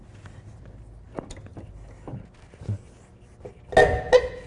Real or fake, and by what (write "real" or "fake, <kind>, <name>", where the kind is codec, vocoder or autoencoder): real